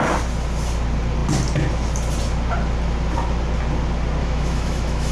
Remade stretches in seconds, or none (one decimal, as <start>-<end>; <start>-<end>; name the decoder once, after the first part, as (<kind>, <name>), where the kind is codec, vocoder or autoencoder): 4.2-5.1 (autoencoder, DAC-VAE)